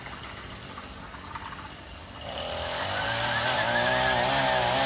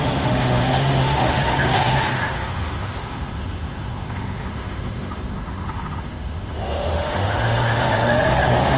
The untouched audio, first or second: first